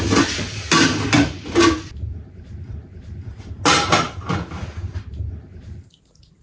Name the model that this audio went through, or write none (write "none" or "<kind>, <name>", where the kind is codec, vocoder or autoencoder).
none